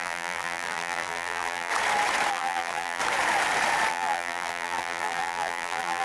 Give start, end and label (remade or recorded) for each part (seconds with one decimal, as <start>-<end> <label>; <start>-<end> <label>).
0.0-1.7 remade; 1.7-2.3 recorded; 2.3-3.0 remade; 3.0-3.9 recorded; 3.9-6.0 remade